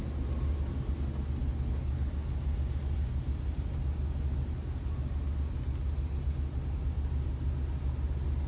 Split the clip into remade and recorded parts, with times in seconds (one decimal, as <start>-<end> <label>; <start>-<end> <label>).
0.0-1.4 recorded; 1.4-2.1 remade; 2.1-8.5 recorded